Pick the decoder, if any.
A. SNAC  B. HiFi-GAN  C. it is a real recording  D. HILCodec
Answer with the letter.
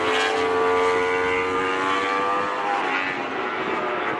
C